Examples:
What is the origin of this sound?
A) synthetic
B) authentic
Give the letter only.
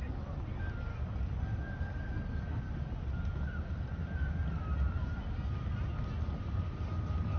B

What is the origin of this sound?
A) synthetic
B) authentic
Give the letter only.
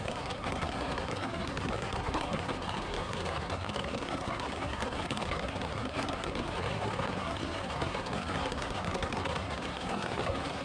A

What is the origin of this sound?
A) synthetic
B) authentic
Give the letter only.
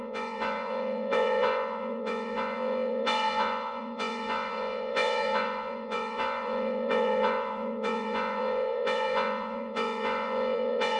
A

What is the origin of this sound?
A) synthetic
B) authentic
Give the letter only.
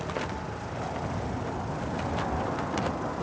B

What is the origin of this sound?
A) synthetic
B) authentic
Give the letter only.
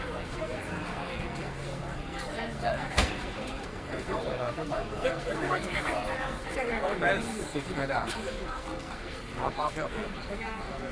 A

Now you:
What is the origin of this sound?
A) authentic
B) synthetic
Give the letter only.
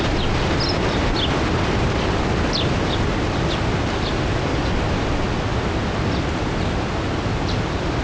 A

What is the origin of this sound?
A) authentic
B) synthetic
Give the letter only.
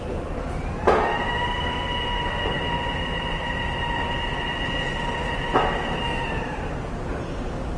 A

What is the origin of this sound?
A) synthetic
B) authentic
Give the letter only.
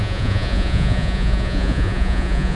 A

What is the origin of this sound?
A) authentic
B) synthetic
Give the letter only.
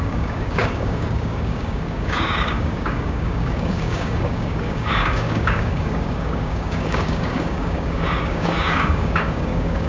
B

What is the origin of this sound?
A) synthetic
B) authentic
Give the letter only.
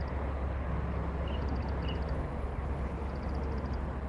B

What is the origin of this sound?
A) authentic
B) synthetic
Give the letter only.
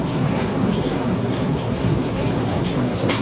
B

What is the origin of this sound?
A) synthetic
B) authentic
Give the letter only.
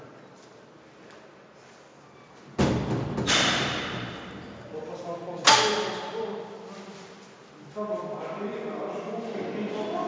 B